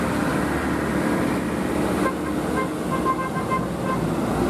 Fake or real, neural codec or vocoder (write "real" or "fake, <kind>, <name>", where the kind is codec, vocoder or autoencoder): real